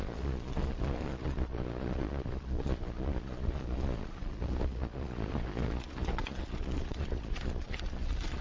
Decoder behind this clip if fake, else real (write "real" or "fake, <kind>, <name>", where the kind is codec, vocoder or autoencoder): fake, vocoder, Vocos